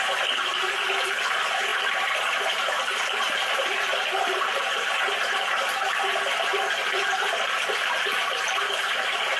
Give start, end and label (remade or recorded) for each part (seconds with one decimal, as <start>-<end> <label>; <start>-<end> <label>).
0.0-6.5 remade; 6.5-7.1 recorded; 7.1-9.4 remade